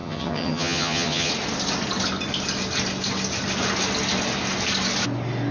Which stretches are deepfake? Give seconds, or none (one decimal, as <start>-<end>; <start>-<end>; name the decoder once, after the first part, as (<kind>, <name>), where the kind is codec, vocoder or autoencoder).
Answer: 0.0-1.3 (vocoder, HiFi-GAN)